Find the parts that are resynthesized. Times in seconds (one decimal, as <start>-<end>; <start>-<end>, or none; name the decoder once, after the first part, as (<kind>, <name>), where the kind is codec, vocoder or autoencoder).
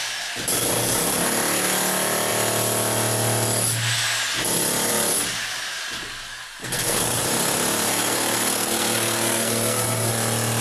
6.6-7.2 (codec, SNAC); 7.9-10.1